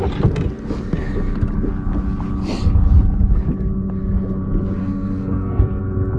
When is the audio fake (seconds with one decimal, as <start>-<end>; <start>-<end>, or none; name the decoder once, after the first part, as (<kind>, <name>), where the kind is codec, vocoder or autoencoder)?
4.8-5.6 (codec, SNAC)